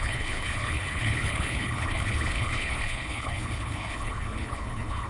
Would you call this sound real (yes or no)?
no